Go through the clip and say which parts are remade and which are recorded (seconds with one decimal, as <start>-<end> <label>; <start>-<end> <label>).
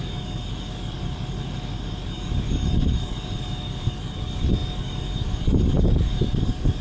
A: 0.0-6.8 remade